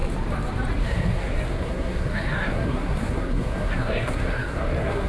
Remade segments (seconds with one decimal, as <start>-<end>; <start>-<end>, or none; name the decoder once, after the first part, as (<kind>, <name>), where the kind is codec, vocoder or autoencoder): 0.8-5.1 (codec, SNAC)